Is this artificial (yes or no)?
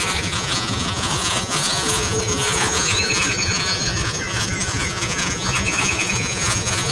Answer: yes